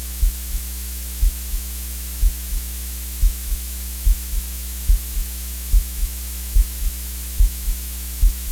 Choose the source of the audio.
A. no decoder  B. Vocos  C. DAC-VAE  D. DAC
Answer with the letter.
C